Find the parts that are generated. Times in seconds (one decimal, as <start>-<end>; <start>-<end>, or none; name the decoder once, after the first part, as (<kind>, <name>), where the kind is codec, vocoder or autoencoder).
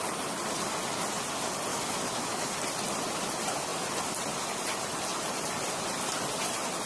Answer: 1.7-2.5 (autoencoder, DAC-VAE)